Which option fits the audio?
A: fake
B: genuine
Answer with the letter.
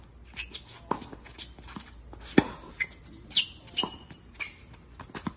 B